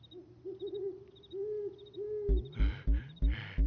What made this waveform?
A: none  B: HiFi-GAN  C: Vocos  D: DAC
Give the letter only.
A